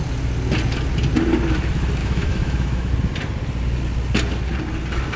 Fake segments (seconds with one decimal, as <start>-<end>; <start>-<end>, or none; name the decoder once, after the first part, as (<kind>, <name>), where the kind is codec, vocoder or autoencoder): 2.0-2.9 (autoencoder, DAC-VAE)